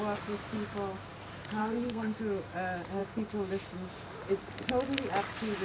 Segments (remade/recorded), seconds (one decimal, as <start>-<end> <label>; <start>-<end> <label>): 0.0-1.6 recorded; 1.6-2.2 remade; 2.2-5.6 recorded